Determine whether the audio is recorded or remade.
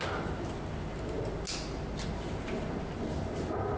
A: recorded